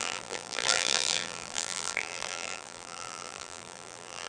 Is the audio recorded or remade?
remade